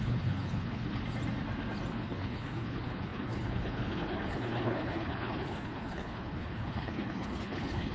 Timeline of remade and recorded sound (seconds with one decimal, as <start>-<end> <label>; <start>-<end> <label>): 0.0-1.0 remade; 1.0-1.9 recorded; 1.9-7.9 remade